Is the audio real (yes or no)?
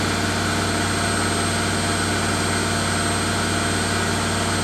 yes